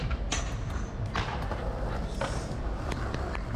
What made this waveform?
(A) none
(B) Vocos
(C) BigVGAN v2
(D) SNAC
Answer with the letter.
A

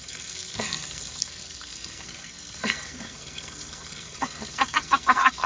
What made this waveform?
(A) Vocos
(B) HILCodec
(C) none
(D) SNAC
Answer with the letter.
D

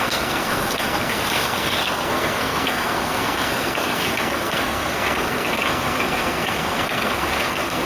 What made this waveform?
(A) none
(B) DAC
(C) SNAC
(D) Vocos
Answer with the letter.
C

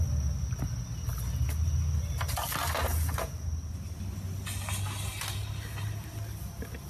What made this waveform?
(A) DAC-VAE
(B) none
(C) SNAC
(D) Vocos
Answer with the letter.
B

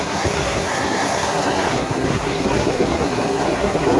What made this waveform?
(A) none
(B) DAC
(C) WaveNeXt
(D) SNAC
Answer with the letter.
D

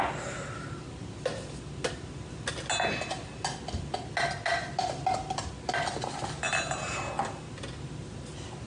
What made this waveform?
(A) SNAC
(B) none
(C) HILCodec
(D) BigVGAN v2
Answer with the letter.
B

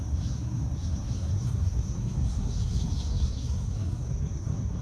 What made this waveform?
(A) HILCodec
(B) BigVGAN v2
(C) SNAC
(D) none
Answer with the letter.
C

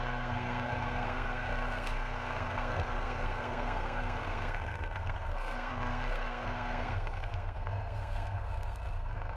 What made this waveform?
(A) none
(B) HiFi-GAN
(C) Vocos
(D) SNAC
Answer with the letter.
D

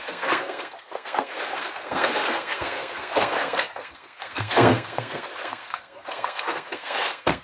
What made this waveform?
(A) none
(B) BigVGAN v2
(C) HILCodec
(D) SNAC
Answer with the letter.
D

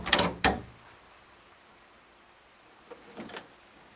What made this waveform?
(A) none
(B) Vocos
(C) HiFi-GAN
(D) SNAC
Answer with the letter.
A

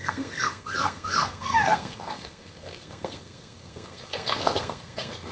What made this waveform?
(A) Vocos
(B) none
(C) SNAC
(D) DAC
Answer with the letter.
C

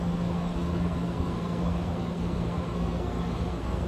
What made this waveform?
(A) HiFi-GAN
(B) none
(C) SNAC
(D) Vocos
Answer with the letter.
C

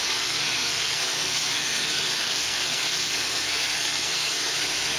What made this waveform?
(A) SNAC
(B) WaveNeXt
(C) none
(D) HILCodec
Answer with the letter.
A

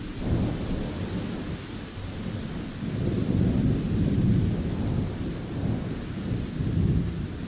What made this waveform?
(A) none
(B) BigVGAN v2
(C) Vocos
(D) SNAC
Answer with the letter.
A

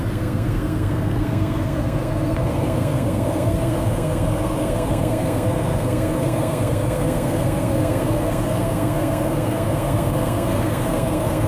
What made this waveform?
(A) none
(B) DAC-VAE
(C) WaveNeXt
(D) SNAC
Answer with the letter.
D